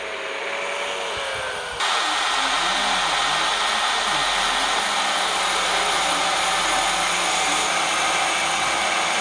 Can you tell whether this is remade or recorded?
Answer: recorded